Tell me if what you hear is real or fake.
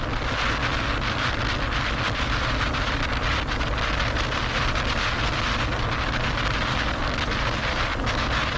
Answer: real